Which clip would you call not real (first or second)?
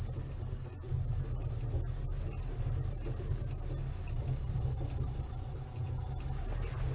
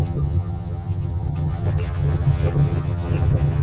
second